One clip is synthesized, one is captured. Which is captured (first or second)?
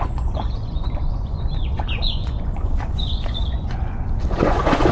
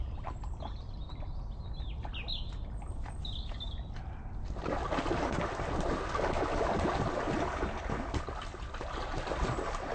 second